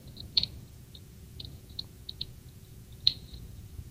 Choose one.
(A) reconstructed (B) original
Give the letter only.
A